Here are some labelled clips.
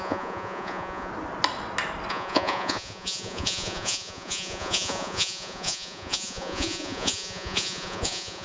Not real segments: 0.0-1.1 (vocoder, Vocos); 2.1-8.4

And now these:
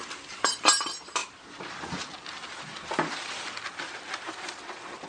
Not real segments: none

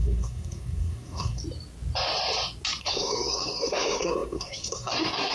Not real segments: 0.0-1.4 (codec, SNAC); 2.8-5.3

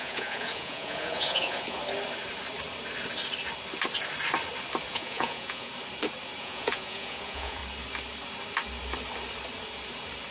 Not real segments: 0.0-1.8 (vocoder, Vocos); 4.9-5.7; 6.4-7.6